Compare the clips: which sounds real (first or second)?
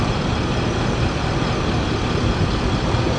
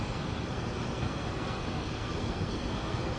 first